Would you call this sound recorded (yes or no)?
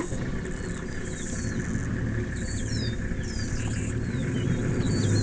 yes